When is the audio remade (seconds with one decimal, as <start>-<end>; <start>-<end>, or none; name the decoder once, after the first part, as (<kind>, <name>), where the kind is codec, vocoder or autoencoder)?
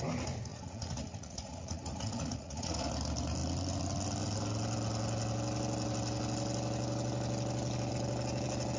0.5-2.9 (vocoder, Vocos)